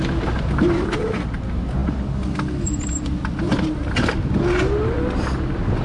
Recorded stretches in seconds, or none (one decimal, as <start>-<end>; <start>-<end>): 0.0-5.8